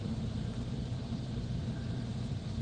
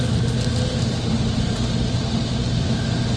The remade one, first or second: first